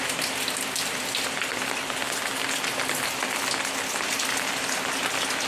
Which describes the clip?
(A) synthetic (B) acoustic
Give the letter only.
B